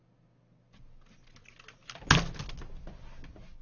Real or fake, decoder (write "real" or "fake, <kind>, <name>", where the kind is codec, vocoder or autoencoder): real